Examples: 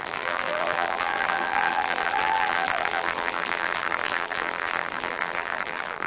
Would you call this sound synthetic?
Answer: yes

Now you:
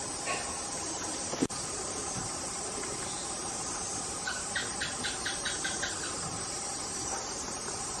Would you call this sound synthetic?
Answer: yes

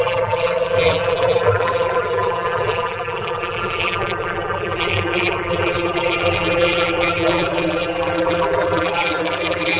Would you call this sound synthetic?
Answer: yes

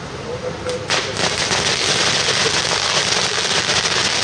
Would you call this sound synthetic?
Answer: no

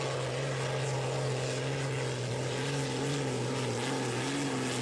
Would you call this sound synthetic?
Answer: no